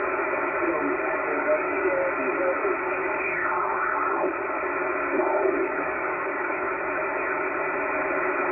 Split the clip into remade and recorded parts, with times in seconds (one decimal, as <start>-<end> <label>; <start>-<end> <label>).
0.0-1.3 recorded; 1.3-2.1 remade; 2.1-3.4 recorded; 3.4-4.6 remade; 4.6-5.1 recorded; 5.1-6.7 remade; 6.7-8.5 recorded